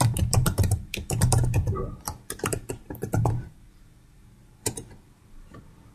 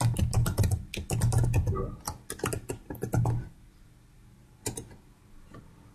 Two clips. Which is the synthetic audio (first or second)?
first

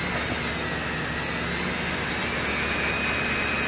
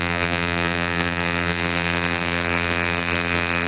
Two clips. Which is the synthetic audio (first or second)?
second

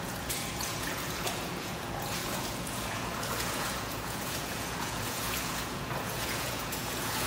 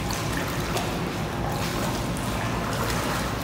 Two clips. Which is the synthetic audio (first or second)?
first